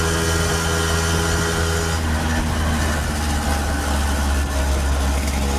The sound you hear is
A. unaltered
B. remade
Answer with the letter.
A